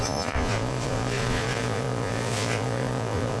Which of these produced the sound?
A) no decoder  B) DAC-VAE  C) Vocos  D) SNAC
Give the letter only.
C